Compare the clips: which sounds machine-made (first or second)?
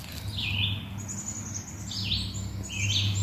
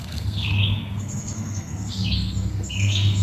second